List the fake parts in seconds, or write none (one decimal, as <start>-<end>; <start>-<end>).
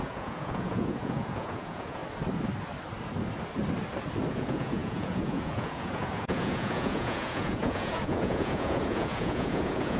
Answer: 0.0-2.0; 4.3-10.0